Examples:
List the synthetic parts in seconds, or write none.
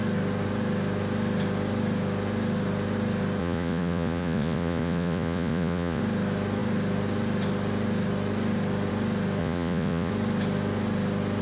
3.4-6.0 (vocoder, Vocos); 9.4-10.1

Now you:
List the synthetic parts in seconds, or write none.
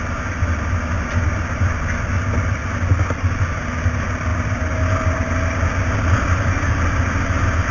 none